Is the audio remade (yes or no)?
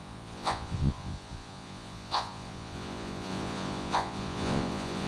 yes